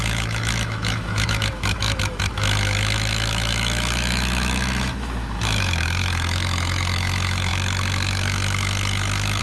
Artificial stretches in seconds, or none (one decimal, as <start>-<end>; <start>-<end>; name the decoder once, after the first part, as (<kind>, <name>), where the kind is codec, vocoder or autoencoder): 0.0-9.4 (autoencoder, DAC-VAE)

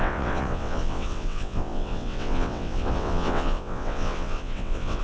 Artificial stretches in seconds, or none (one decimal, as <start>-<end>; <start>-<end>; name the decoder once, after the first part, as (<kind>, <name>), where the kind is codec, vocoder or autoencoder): 0.0-5.0 (vocoder, WaveNeXt)